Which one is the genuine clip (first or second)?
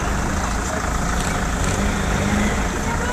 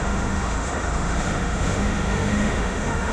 first